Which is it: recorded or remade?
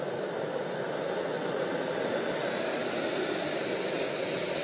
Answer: recorded